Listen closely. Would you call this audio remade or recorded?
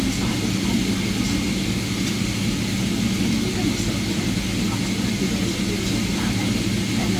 recorded